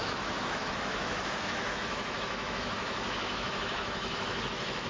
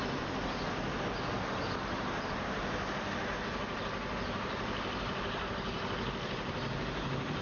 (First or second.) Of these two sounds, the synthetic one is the first